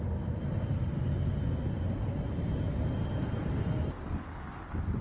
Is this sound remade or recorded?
recorded